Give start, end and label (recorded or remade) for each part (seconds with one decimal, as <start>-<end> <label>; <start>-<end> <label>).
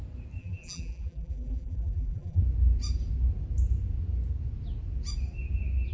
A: 0.0-0.4 recorded; 0.4-2.4 remade; 2.4-5.9 recorded